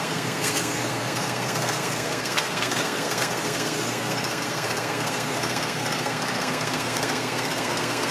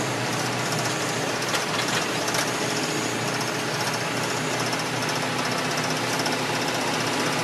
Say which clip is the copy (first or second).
first